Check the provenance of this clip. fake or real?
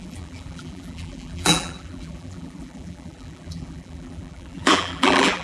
fake